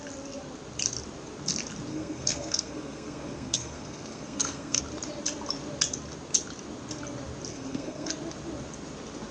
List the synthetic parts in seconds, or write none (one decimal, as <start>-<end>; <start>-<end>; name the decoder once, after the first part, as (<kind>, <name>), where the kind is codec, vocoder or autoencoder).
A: 1.9-4.8 (codec, SNAC); 7.5-8.1